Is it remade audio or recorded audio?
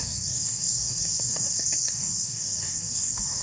remade